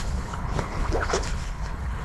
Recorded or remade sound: remade